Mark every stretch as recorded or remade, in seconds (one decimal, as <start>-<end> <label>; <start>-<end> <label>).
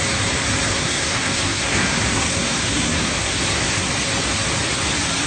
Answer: 0.0-0.7 recorded; 0.7-3.9 remade; 3.9-5.3 recorded